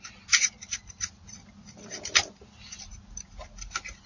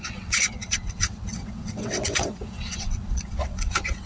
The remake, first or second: second